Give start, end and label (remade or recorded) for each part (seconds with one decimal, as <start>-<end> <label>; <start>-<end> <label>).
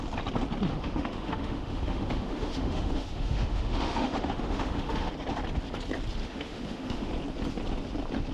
0.0-0.7 recorded; 0.7-5.1 remade; 5.1-6.2 recorded; 6.2-7.1 remade; 7.1-8.3 recorded